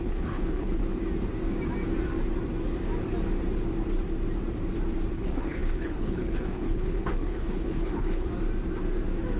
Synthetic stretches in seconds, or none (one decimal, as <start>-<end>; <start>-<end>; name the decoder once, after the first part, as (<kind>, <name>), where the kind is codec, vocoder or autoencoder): 0.0-0.8 (codec, HILCodec); 5.1-8.3